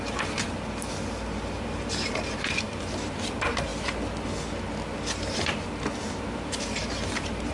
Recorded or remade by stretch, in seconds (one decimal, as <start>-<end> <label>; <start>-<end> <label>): 0.0-3.7 remade; 3.7-6.5 recorded; 6.5-7.5 remade